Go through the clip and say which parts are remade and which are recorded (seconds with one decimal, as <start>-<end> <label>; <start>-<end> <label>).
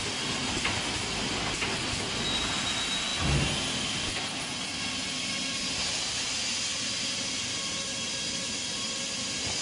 0.0-6.7 recorded; 6.7-8.5 remade; 8.5-9.6 recorded